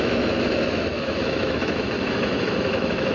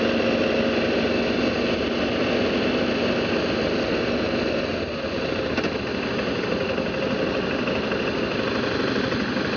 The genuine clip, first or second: second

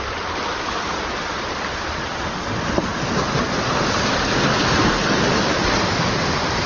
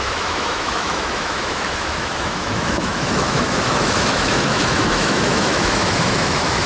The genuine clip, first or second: first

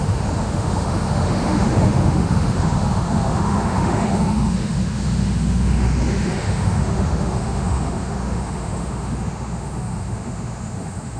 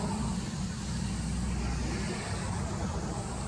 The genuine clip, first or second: second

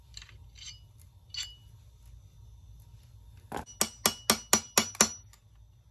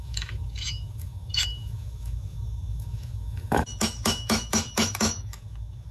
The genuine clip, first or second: first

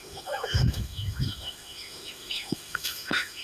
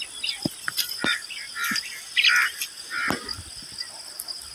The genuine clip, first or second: second